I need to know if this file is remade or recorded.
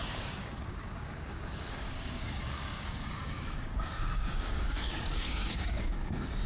remade